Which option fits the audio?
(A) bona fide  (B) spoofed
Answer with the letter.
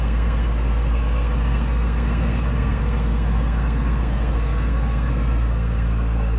B